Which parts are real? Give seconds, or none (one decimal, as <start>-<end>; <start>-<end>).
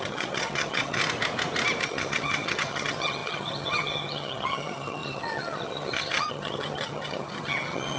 1.0-1.8